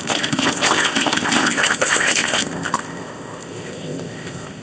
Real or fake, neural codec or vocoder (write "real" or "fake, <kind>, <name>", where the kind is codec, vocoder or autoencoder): fake, codec, ZipCodec